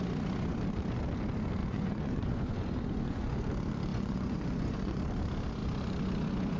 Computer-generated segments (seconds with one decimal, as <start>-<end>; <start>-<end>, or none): 1.6-3.5; 3.9-5.0